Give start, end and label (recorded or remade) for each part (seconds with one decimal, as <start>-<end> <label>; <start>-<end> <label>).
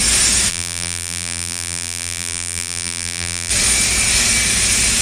0.0-0.5 recorded; 0.5-3.5 remade; 3.5-5.0 recorded